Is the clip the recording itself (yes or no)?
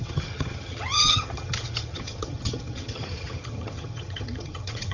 no